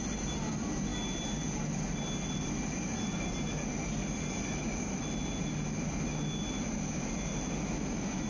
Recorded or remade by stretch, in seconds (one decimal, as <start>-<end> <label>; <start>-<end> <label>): 0.0-8.3 recorded